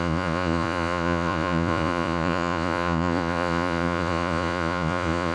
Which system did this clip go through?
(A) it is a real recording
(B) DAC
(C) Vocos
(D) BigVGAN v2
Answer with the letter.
C